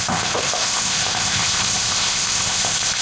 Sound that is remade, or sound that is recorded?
remade